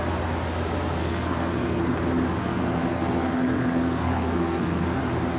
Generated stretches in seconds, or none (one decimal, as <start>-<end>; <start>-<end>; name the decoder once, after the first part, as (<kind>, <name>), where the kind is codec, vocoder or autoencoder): 1.0-1.8 (codec, SNAC); 2.4-5.0